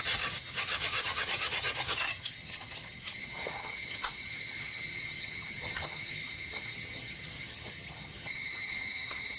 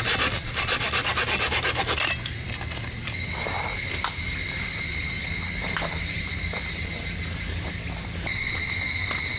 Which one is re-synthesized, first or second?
first